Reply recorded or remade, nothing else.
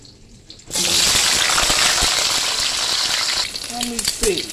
recorded